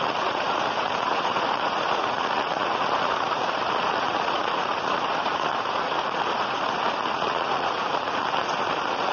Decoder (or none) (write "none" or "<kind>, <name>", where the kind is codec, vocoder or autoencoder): vocoder, Vocos